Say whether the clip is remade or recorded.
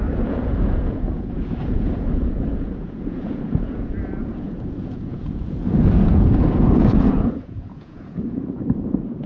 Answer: remade